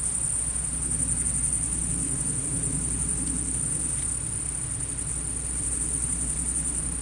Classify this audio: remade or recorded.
recorded